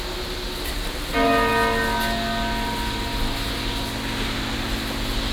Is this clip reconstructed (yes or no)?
no